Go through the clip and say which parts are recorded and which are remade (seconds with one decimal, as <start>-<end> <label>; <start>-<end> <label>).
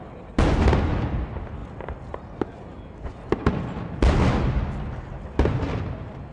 0.0-6.3 recorded